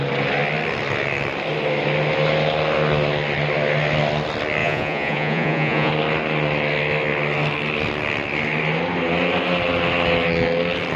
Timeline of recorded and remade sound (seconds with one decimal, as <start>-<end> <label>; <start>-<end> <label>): 0.0-4.6 recorded; 4.6-5.9 remade; 5.9-11.0 recorded